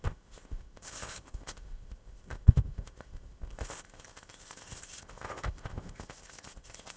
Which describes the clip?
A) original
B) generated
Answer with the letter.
B